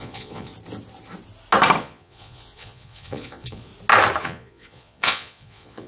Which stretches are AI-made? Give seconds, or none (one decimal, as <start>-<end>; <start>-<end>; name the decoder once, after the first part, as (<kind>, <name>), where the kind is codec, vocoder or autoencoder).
0.0-0.5 (vocoder, Vocos); 1.8-3.7; 4.2-5.9